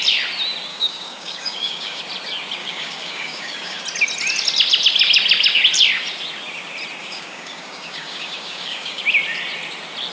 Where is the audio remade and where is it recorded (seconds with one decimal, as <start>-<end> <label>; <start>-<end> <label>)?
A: 0.0-0.7 recorded; 0.7-2.0 remade; 2.0-2.6 recorded; 2.6-3.8 remade; 3.8-7.0 recorded; 7.0-9.0 remade; 9.0-10.1 recorded